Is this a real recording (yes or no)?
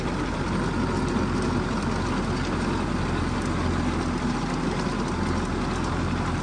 yes